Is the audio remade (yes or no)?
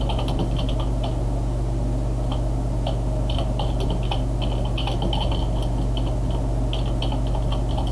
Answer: no